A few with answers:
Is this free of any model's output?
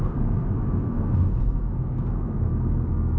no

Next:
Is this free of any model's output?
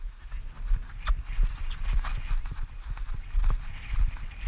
yes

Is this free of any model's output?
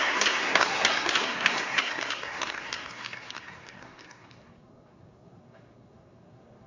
no